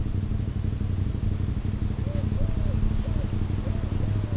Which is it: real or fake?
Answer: real